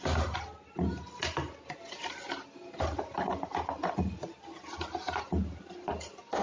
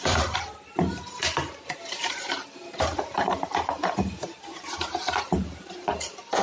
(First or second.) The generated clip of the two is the second